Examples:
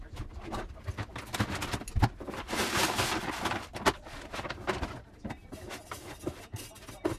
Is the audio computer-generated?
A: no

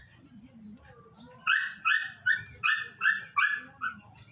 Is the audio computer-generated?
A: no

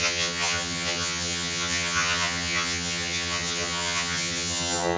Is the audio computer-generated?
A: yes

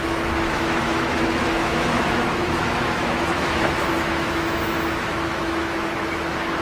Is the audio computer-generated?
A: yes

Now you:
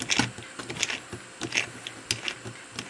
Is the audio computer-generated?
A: no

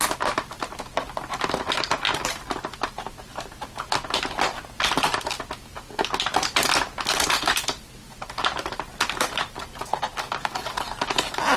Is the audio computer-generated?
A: no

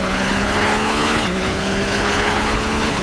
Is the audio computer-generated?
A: yes